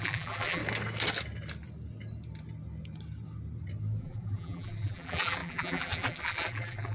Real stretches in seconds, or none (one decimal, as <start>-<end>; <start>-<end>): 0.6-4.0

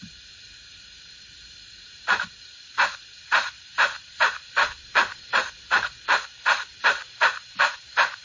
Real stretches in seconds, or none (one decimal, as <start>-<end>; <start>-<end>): none

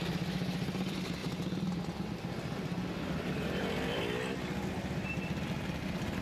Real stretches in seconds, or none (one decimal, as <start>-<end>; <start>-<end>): 0.0-1.2; 4.0-6.2

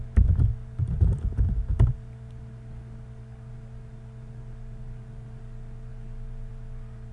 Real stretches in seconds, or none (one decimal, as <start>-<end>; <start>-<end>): 0.0-7.1